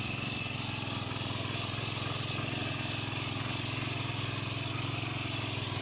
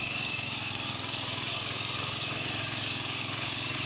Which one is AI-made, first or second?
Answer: second